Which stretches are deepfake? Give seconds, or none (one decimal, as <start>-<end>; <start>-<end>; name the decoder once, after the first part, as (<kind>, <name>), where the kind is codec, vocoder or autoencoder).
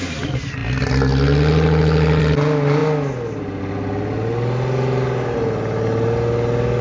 none